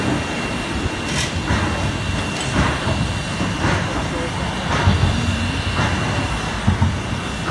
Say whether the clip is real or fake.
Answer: real